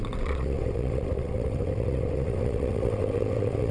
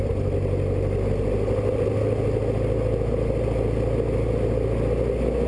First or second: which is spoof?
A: first